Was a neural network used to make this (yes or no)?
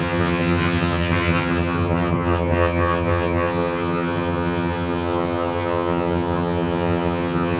yes